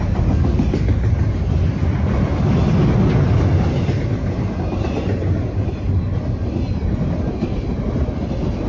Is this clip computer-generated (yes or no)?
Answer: no